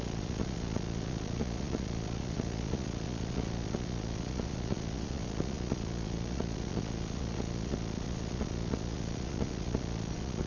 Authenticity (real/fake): fake